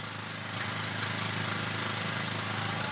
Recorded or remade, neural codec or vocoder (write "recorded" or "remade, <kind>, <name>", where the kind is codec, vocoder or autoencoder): recorded